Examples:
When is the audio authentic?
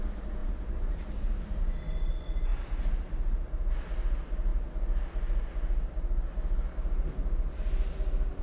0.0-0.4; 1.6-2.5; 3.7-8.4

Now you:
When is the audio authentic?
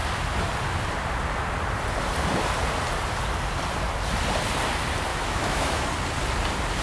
0.0-5.1; 5.9-6.8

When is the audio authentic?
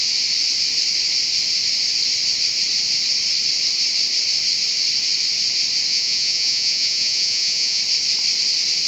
0.0-5.9; 7.8-8.9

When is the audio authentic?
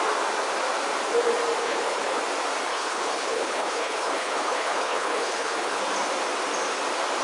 0.0-1.6; 2.2-2.7; 5.8-7.2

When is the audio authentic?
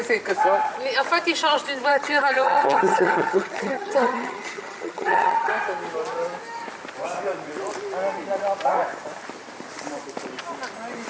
0.0-1.9; 5.5-11.1